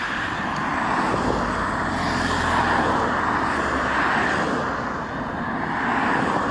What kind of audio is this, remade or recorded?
recorded